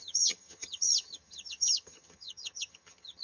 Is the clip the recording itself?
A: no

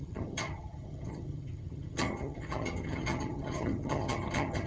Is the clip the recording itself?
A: no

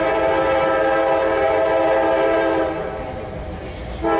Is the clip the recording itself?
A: yes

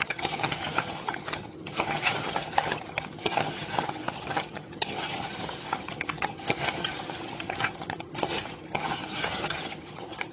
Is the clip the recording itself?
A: no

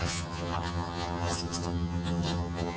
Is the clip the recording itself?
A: no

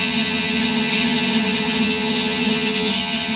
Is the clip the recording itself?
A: no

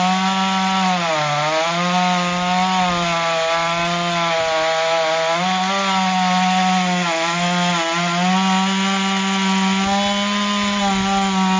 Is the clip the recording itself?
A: yes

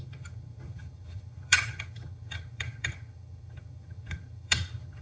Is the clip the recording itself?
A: no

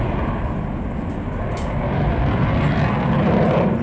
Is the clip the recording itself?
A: yes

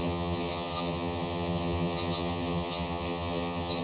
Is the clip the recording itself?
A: no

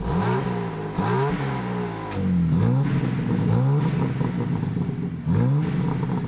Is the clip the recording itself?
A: yes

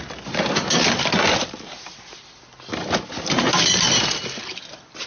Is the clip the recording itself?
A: yes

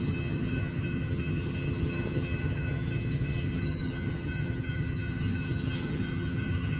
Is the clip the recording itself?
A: no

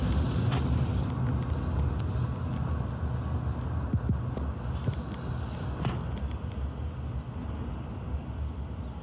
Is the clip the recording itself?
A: yes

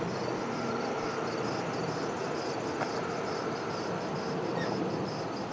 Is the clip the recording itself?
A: yes